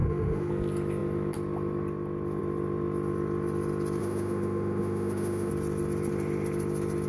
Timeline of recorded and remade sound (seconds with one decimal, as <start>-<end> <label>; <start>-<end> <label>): 0.0-0.5 remade; 0.5-4.0 recorded; 4.0-5.5 remade; 5.5-7.1 recorded